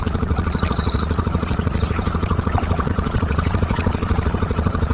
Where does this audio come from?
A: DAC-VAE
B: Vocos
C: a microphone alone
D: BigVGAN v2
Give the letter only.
B